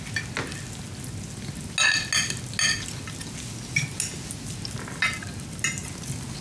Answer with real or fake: real